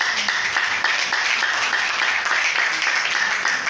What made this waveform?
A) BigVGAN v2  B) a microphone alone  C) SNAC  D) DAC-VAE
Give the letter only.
B